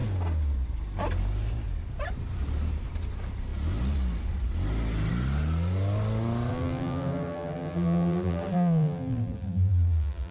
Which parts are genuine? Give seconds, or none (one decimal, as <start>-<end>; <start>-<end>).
0.0-6.5

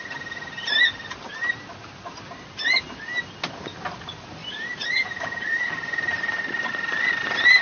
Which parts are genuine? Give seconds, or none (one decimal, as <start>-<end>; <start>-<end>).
0.0-4.4

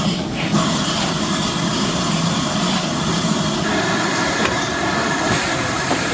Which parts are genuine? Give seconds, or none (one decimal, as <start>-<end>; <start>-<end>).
0.5-1.4

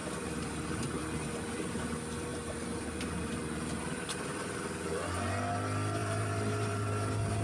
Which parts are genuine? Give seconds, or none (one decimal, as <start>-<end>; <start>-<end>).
1.3-2.3; 5.3-6.0; 6.9-7.4

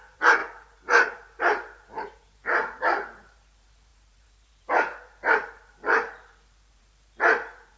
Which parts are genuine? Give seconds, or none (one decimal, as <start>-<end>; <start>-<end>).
none